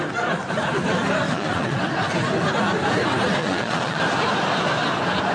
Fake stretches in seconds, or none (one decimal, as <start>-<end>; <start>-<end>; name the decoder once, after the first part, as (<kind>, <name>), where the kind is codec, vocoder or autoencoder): 1.3-1.8 (vocoder, Vocos); 3.4-4.0